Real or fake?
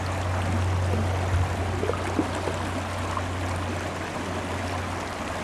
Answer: fake